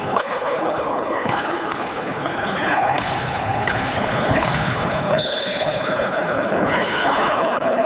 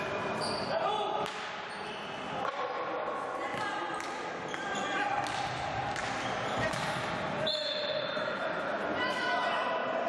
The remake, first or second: first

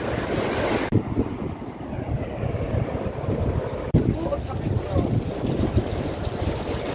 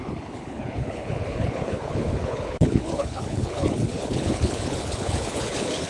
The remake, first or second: second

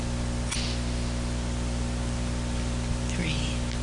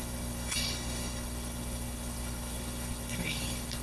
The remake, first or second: second